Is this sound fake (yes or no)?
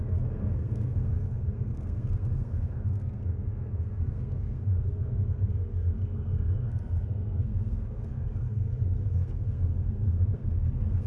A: yes